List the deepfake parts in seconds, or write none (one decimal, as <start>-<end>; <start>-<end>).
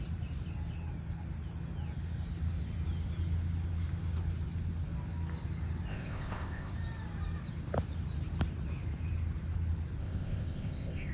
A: 5.9-6.7; 10.0-11.1